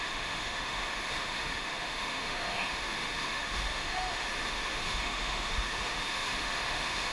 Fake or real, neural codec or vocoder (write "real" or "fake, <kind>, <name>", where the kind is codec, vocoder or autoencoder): fake, autoencoder, DAC-VAE